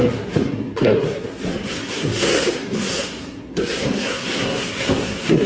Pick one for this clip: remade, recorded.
remade